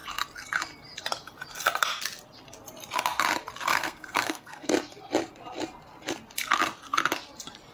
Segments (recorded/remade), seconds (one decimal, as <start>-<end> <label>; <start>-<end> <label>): 0.0-3.7 recorded; 3.7-4.7 remade; 4.7-7.7 recorded